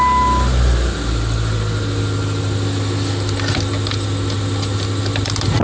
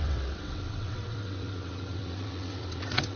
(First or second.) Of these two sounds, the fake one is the second